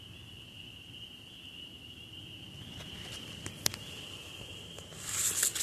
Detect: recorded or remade recorded